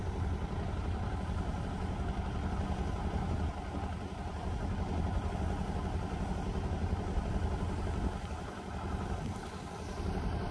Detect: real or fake real